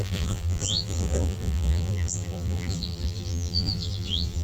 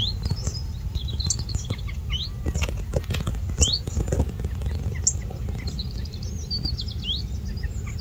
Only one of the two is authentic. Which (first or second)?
second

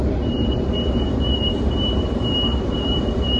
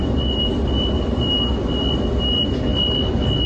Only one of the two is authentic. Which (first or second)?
second